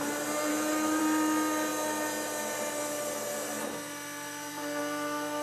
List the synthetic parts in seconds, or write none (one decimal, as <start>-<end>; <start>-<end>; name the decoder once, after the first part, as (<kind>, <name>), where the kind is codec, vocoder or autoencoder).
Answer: 0.5-1.0 (autoencoder, DAC-VAE)